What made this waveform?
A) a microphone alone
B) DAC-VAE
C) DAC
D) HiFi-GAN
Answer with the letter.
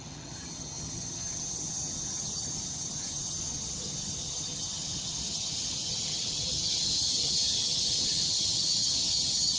D